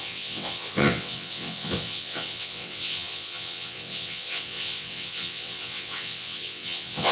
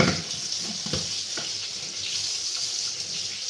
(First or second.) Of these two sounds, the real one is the second